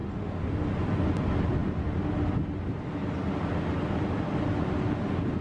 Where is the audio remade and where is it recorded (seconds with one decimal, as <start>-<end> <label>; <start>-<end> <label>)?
0.0-5.4 recorded